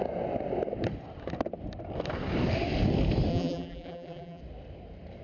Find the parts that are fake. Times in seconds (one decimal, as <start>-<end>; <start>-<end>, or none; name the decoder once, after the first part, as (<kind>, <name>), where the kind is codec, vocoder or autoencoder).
3.3-4.4 (vocoder, BigVGAN v2)